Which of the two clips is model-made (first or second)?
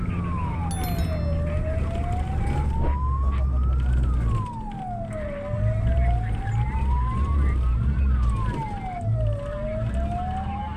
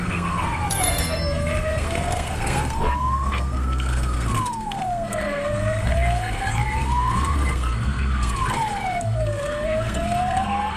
second